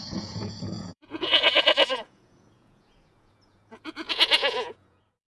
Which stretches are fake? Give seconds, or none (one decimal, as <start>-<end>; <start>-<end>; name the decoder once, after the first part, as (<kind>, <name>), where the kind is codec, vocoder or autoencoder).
0.0-5.3 (vocoder, Vocos)